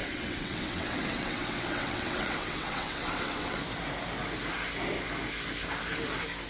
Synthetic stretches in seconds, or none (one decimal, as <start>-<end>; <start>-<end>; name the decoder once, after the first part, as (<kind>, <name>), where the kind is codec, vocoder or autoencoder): 0.0-3.6 (vocoder, WaveNeXt)